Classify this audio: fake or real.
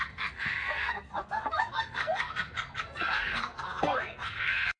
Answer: fake